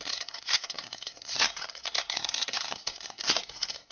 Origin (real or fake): fake